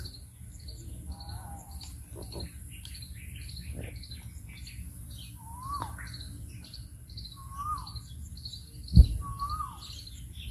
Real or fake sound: real